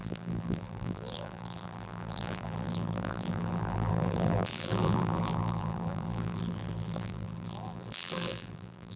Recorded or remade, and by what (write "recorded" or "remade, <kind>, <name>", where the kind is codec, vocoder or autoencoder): remade, vocoder, BigVGAN v2